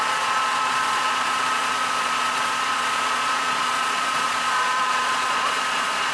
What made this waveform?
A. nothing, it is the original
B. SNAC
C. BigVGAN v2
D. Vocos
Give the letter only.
D